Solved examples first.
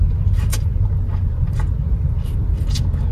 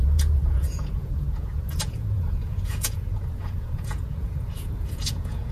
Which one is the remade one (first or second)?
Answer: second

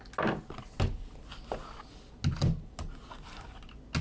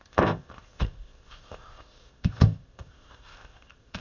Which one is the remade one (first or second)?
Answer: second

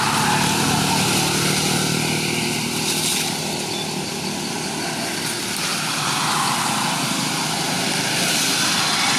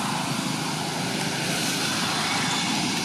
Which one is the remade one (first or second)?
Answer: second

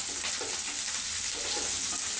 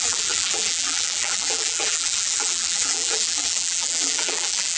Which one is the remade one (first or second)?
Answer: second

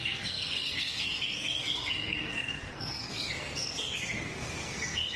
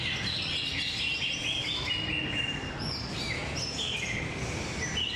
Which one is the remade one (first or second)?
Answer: first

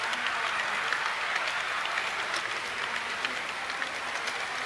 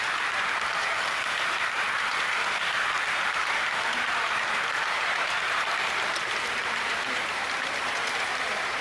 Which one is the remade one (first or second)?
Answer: second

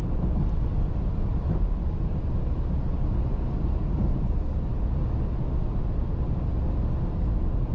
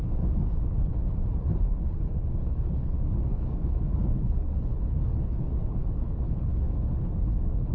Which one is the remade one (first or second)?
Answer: second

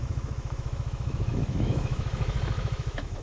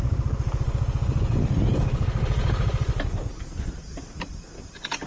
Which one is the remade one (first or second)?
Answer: first